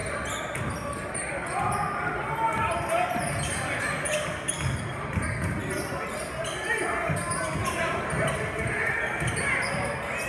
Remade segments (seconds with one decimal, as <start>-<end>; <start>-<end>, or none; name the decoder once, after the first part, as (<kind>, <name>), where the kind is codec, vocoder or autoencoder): none